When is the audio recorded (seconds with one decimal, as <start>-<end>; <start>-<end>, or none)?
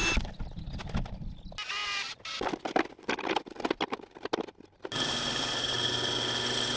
0.0-6.8